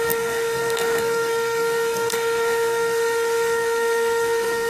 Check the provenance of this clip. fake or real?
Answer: fake